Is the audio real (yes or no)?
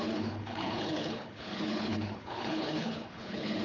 no